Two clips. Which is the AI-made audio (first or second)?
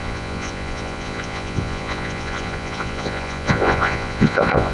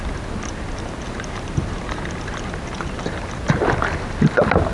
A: first